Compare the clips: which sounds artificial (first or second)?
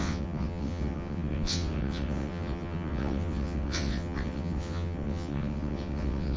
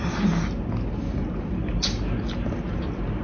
first